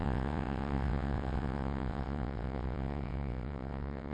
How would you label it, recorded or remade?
remade